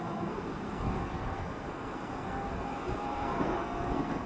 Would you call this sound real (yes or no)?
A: no